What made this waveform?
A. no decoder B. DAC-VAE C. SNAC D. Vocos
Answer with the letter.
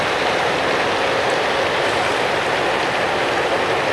A